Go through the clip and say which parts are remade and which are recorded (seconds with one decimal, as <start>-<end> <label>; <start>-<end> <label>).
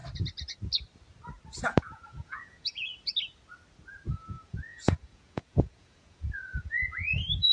0.0-1.9 recorded; 1.9-2.9 remade; 2.9-4.1 recorded; 4.1-7.5 remade